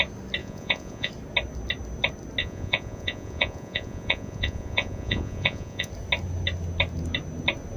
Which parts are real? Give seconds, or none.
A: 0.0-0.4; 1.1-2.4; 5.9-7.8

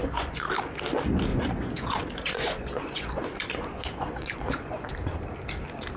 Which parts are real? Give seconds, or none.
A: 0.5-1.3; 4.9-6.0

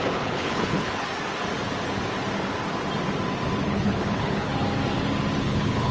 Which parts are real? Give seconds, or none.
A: 1.1-3.6; 4.5-5.4

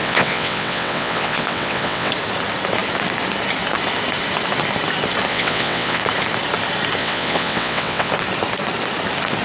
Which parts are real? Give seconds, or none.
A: 2.1-5.3; 6.0-7.0; 8.1-9.4

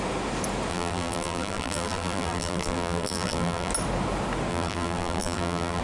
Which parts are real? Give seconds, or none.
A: 0.0-0.7; 3.7-4.5

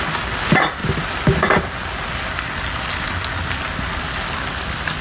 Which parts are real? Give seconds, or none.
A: 0.0-5.0